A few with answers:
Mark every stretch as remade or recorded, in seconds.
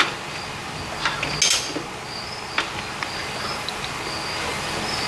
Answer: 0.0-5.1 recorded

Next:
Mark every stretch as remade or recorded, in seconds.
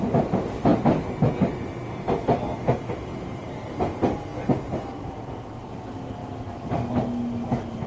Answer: 0.0-3.1 recorded; 3.1-3.7 remade; 3.7-6.2 recorded; 6.2-6.9 remade; 6.9-7.9 recorded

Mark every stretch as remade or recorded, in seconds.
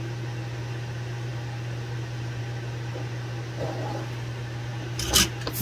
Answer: 0.0-5.6 recorded